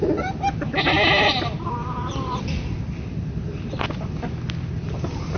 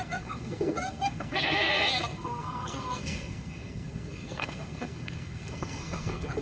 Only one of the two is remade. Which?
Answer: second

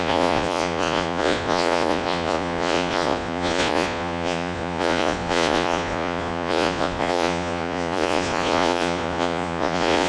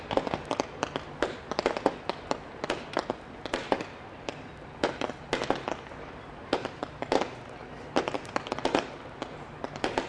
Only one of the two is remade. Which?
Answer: first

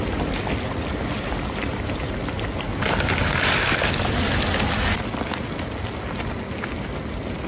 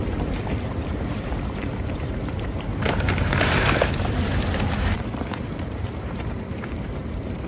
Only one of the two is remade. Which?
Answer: second